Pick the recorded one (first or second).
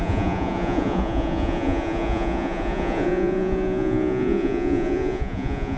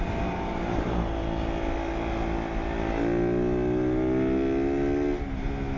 second